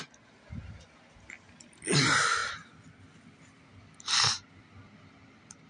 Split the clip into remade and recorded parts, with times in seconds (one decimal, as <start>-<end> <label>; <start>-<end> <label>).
0.0-5.7 recorded